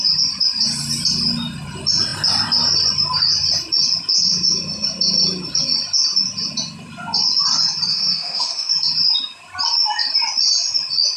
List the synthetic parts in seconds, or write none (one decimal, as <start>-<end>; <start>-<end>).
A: 7.9-8.7